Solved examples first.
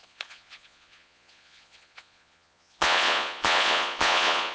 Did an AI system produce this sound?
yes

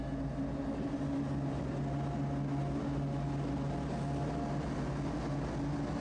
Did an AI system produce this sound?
no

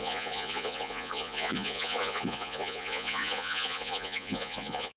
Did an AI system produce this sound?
yes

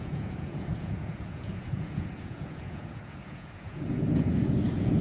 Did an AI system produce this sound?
yes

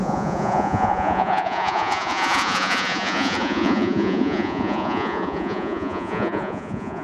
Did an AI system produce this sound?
yes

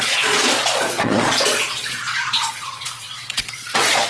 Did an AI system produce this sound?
yes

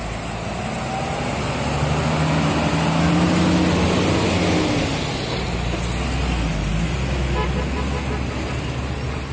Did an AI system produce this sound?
no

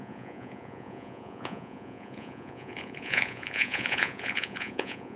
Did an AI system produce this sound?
yes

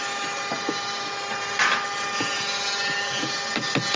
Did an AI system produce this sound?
no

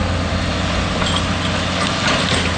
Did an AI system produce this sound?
no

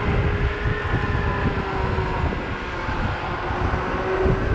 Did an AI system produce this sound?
no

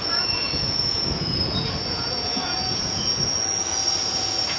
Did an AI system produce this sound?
yes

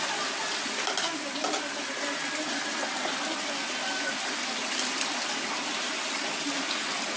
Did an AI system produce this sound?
no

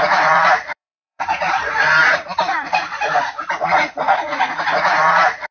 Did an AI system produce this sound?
yes